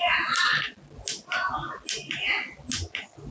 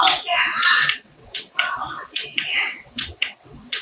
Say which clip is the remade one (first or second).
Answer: second